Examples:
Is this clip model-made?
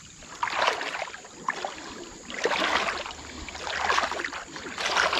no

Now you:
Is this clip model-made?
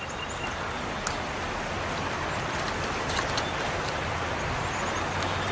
no